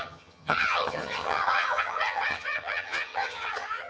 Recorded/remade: remade